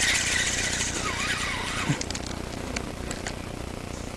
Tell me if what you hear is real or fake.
real